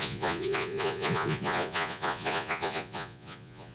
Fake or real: fake